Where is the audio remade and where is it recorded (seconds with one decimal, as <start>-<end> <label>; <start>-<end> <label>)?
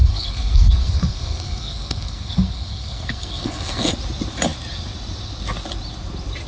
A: 0.0-3.9 remade; 3.9-6.5 recorded